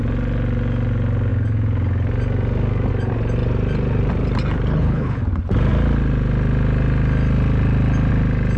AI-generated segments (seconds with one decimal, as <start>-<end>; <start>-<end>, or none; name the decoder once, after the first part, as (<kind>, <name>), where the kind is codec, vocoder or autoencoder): 4.7-5.2 (codec, HILCodec)